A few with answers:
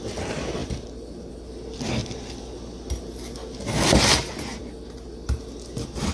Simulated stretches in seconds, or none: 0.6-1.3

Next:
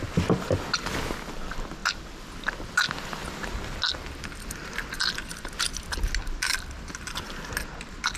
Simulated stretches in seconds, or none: none

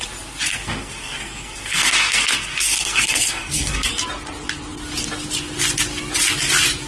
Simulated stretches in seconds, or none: 0.5-3.9

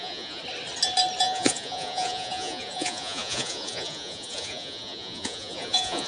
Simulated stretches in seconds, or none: 0.0-0.4; 1.2-6.1

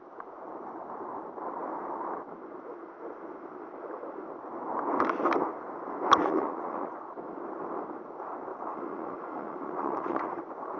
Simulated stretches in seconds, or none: 6.2-7.0; 8.5-10.4

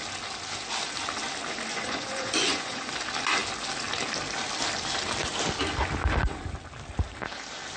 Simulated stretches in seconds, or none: 1.7-2.9